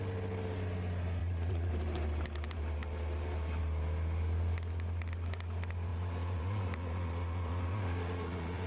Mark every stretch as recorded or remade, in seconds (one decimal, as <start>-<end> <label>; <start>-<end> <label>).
0.0-1.2 recorded; 1.2-1.7 remade; 1.7-5.9 recorded; 5.9-8.7 remade